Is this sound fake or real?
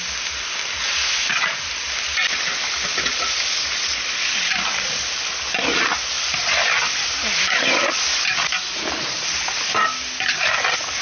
fake